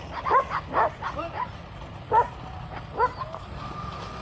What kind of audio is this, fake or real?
real